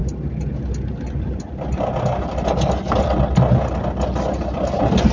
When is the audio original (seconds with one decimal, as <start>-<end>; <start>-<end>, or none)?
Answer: 0.0-5.1